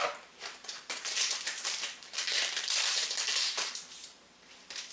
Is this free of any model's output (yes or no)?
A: no